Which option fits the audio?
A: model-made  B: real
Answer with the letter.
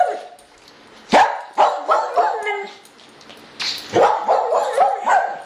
B